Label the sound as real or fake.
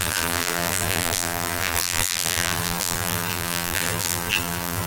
fake